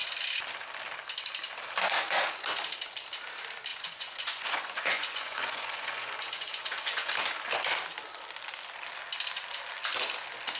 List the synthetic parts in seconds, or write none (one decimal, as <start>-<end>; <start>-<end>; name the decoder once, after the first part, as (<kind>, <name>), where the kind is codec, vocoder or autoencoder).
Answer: 3.7-7.1 (vocoder, Vocos)